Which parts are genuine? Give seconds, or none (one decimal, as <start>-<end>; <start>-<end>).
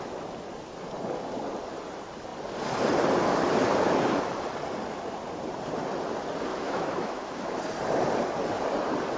0.0-6.5; 7.4-9.2